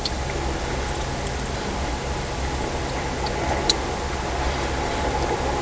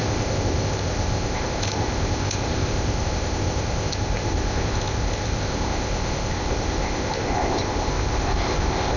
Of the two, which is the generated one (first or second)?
second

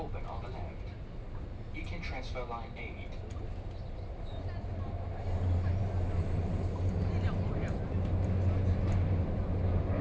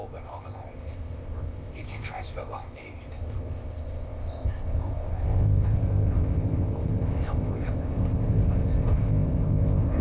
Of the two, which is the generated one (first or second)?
second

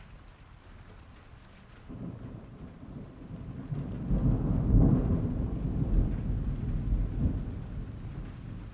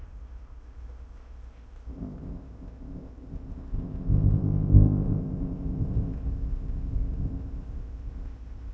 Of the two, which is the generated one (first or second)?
second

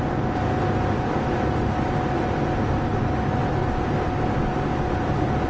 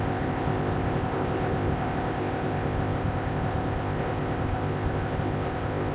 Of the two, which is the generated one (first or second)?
second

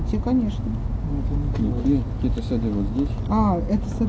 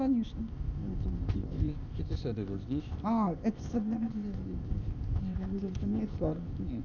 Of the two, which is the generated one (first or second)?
second